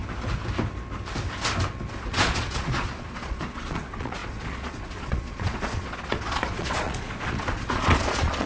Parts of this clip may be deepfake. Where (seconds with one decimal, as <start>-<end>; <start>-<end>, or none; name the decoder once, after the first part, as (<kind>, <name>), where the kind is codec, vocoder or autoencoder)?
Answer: 1.9-8.5 (vocoder, Vocos)